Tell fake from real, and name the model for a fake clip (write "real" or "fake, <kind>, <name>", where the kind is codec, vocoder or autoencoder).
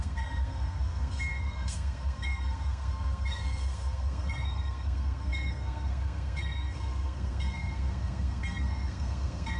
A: fake, codec, SNAC